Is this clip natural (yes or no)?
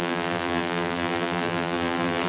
no